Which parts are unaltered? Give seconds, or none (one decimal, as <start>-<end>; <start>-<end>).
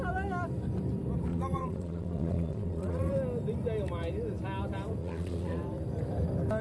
0.0-1.3; 3.1-5.0; 5.6-6.6